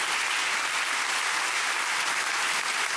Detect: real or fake real